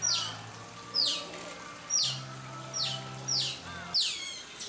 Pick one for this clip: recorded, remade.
recorded